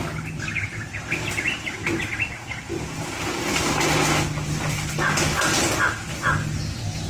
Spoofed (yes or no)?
no